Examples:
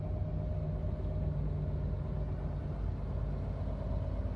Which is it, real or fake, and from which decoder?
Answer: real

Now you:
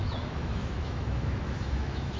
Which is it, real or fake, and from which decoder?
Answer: fake, autoencoder, DAC-VAE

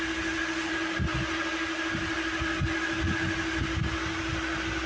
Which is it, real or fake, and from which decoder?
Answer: real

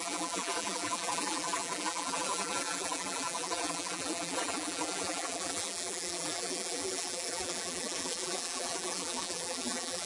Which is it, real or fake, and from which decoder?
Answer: fake, vocoder, BigVGAN v2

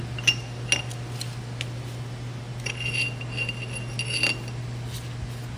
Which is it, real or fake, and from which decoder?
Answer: real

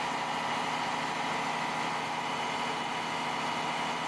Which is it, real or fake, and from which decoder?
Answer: real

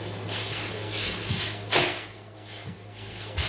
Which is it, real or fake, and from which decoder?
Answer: fake, codec, SNAC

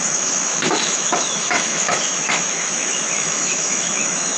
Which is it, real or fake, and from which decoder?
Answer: fake, autoencoder, DAC-VAE